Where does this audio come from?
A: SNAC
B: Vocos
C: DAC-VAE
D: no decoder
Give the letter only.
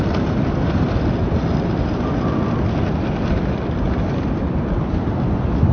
D